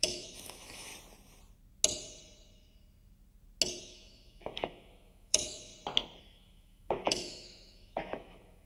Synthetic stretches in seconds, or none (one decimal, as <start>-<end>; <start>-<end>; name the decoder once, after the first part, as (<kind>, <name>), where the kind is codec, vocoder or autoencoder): 0.0-0.9 (autoencoder, DAC-VAE); 3.8-5.7; 6.2-8.7